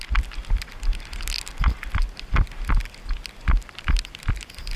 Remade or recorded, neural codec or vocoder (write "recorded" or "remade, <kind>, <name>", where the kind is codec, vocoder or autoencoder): recorded